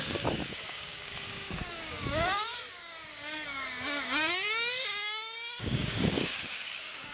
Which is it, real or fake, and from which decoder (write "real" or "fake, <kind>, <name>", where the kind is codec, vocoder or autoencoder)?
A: fake, codec, DAC